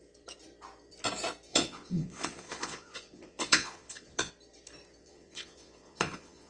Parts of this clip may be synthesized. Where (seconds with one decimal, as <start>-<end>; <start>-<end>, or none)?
1.5-4.3; 5.0-6.5